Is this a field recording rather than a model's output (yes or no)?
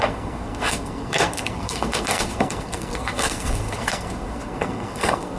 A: no